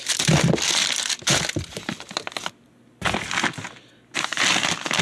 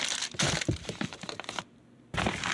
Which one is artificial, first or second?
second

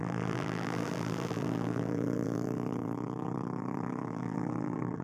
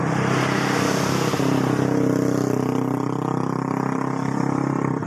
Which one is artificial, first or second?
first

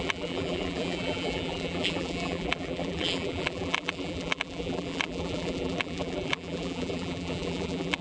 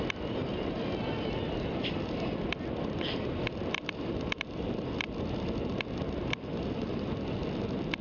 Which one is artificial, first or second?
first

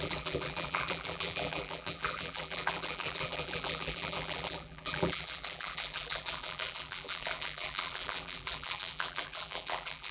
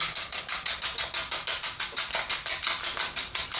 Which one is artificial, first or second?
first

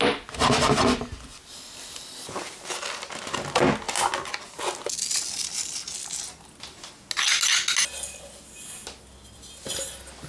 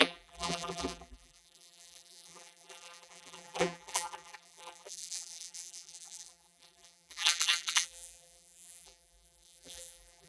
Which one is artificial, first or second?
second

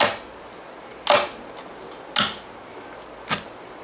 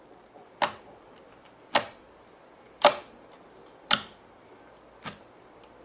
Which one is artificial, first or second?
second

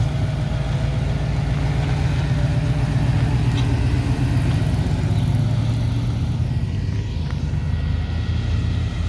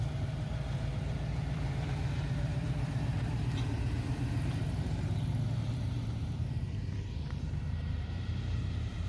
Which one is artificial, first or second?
second